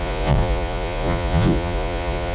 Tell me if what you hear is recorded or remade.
remade